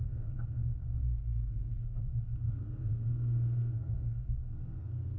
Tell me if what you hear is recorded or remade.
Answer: remade